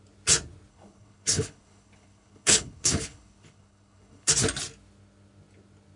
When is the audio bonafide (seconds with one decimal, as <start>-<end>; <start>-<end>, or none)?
0.0-0.7; 4.3-6.0

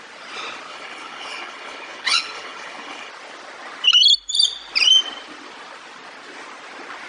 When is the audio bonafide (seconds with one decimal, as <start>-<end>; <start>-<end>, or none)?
0.0-0.7; 3.1-7.1